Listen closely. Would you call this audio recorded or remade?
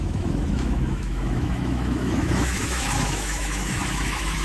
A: remade